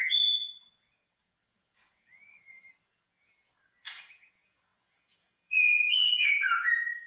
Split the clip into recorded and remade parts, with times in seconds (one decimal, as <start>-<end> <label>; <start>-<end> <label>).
0.0-7.1 remade